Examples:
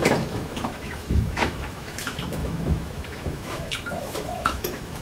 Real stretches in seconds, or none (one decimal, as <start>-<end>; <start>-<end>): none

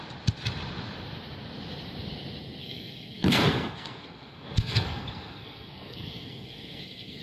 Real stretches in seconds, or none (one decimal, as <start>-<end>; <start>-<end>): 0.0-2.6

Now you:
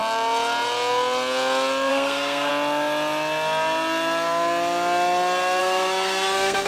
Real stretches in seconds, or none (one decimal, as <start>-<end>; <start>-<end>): 0.0-1.9; 2.5-5.6

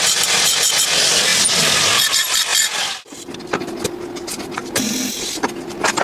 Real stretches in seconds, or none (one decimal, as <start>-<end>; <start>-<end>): 0.0-6.0